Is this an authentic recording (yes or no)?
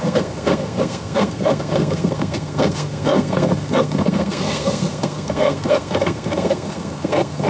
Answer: no